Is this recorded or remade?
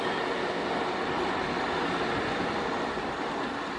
recorded